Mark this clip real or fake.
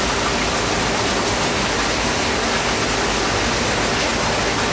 real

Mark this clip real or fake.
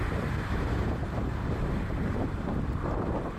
fake